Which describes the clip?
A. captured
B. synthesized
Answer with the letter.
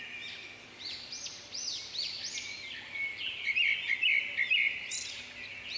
A